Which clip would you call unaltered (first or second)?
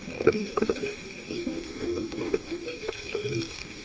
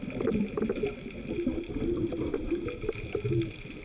second